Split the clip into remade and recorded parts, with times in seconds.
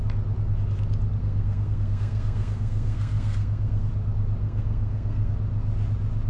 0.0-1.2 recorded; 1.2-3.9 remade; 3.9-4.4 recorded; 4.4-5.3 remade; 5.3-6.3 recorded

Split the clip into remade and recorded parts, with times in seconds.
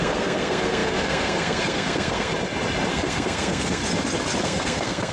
0.0-2.3 remade; 2.3-2.9 recorded; 2.9-3.8 remade; 3.8-4.4 recorded; 4.4-5.1 remade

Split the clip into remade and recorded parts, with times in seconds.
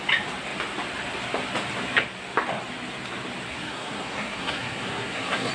0.0-3.5 recorded; 3.5-5.5 remade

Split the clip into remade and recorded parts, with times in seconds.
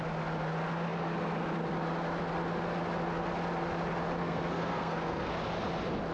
0.0-4.2 recorded; 4.2-5.3 remade; 5.3-6.1 recorded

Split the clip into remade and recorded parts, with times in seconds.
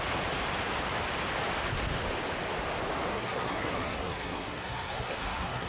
0.0-3.1 recorded; 3.1-5.7 remade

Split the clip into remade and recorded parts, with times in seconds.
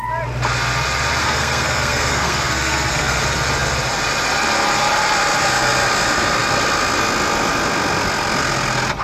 0.0-1.2 recorded; 1.2-3.2 remade; 3.2-9.0 recorded